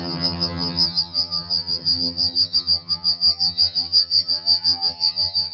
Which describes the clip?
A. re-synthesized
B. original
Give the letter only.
A